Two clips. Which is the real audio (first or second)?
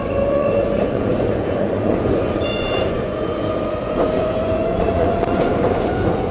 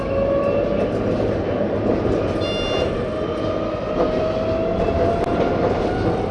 second